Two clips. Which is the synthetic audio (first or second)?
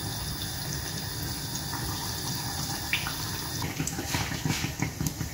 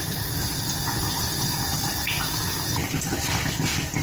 second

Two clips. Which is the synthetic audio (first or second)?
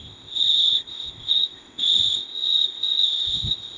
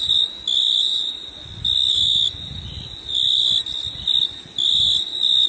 first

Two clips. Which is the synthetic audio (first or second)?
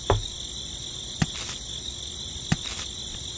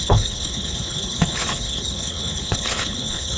second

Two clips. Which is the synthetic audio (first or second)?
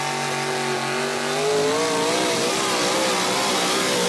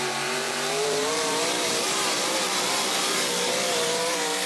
second